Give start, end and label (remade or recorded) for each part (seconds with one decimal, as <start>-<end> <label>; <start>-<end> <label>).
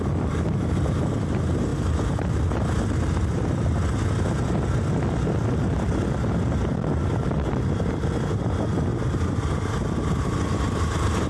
0.0-11.3 recorded